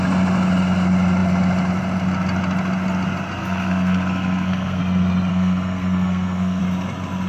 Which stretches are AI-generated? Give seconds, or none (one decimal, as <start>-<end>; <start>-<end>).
3.4-4.8; 5.3-6.6